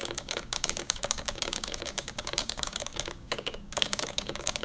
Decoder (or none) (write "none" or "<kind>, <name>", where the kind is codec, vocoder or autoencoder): codec, DAC